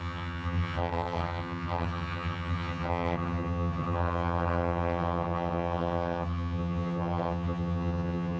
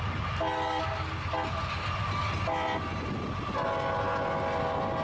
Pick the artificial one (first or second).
first